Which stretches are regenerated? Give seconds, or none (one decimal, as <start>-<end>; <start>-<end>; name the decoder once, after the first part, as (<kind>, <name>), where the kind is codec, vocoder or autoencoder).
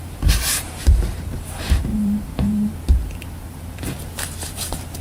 0.0-5.0 (vocoder, BigVGAN v2)